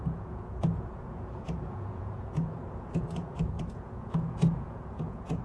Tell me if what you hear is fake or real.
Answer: fake